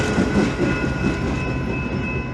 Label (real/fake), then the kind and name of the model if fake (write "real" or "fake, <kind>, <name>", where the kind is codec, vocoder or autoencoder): real